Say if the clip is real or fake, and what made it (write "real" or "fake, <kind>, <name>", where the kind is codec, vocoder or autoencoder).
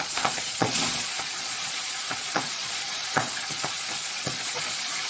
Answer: fake, vocoder, Vocos